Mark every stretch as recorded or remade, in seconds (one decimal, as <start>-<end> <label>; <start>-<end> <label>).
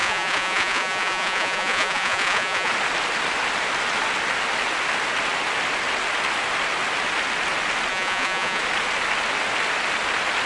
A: 0.0-2.7 remade; 2.7-7.9 recorded; 7.9-8.6 remade; 8.6-10.5 recorded